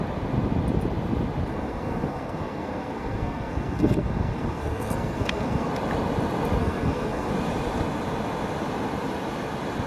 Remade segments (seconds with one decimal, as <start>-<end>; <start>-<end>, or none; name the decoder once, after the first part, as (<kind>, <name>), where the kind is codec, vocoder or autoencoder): 1.5-5.7 (codec, SNAC); 6.6-7.3